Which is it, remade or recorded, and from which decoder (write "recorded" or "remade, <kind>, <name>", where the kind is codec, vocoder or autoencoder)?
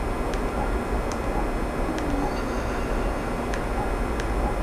recorded